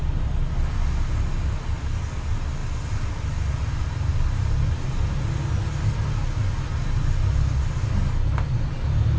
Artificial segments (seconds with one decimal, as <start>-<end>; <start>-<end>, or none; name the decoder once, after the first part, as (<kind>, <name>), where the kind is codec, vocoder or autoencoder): none